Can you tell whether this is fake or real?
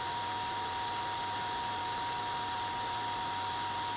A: real